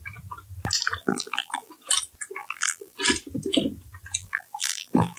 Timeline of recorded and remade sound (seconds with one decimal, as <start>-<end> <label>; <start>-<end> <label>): 0.0-1.0 recorded; 1.0-1.7 remade; 1.7-2.4 recorded; 2.4-3.0 remade; 3.0-4.2 recorded; 4.2-5.2 remade